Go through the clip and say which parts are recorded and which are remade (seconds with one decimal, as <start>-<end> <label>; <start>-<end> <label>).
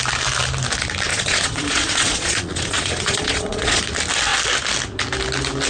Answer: 0.0-1.1 recorded; 1.1-3.8 remade; 3.8-5.7 recorded